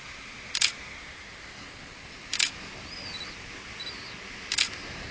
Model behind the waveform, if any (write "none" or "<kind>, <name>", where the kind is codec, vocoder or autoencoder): none